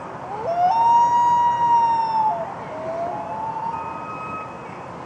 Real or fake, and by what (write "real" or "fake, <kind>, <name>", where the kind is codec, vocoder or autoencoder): real